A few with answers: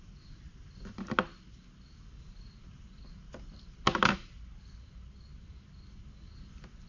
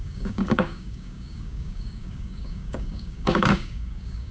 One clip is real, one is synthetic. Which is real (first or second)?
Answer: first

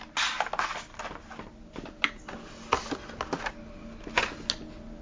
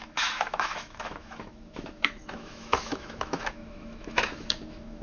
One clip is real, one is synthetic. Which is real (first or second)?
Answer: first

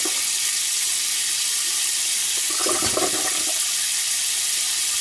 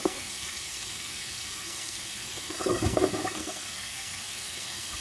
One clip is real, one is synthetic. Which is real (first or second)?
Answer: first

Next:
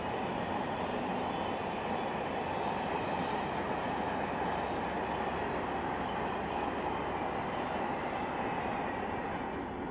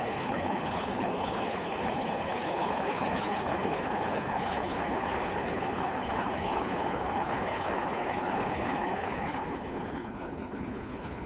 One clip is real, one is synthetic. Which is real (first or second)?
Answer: first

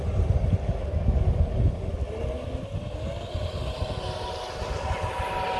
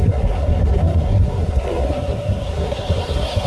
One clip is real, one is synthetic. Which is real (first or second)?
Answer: first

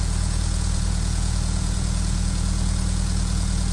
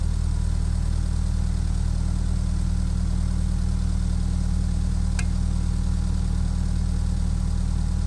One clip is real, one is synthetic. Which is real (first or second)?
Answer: second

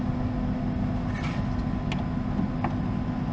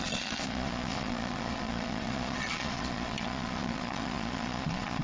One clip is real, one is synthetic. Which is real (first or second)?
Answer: first